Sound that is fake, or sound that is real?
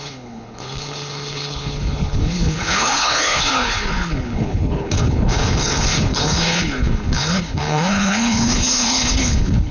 fake